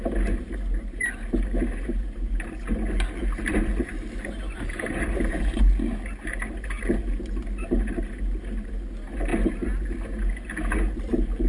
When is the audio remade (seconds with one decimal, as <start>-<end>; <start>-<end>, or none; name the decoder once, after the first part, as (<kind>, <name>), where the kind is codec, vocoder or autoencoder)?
3.9-5.6 (vocoder, BigVGAN v2)